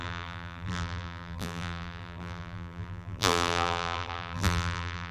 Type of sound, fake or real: fake